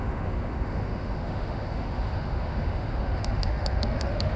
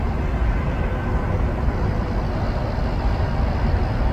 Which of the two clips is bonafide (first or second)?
second